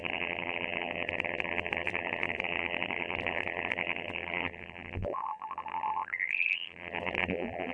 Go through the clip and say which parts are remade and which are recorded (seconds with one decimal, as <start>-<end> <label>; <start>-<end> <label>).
0.0-7.7 remade